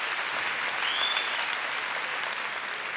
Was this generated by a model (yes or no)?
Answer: no